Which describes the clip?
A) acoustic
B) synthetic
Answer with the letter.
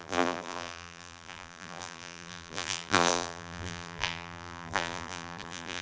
B